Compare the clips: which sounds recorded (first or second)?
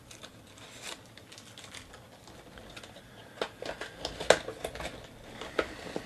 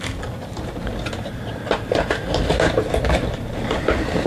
first